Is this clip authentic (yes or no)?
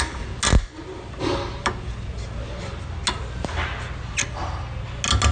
yes